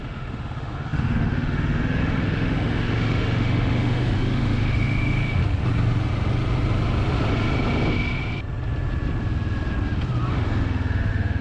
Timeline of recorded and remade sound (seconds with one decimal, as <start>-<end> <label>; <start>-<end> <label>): 0.0-5.4 remade; 5.4-10.3 recorded; 10.3-11.4 remade